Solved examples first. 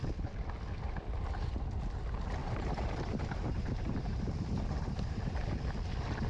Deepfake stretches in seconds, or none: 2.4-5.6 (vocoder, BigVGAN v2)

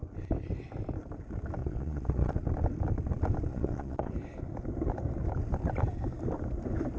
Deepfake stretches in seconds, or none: 1.6-2.3 (vocoder, Vocos); 3.5-4.1

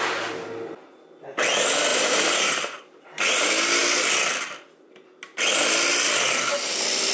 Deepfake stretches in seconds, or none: 1.9-3.2 (vocoder, BigVGAN v2)

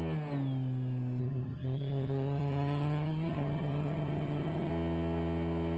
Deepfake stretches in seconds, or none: 1.2-4.7 (vocoder, HiFi-GAN)

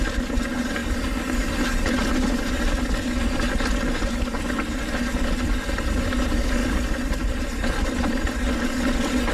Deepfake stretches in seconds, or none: 0.8-3.7 (vocoder, BigVGAN v2); 6.6-8.5

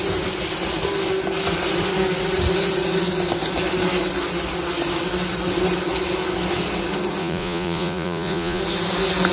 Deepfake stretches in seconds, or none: 7.2-8.6 (vocoder, Vocos)

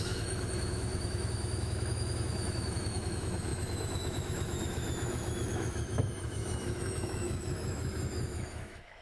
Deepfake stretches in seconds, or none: 0.0-9.0 (autoencoder, DAC-VAE)